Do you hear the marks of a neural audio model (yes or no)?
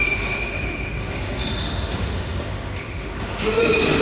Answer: yes